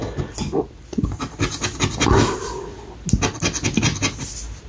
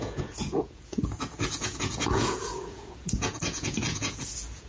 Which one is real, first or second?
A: first